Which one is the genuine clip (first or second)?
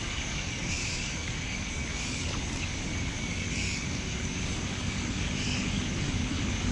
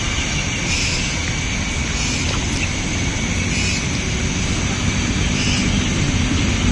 second